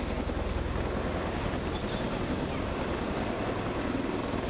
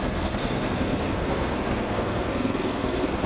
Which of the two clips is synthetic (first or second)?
second